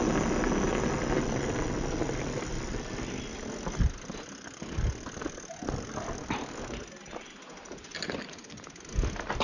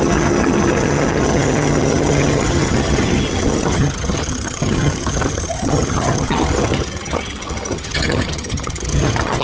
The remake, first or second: second